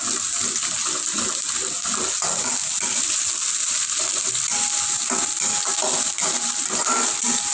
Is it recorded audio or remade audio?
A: recorded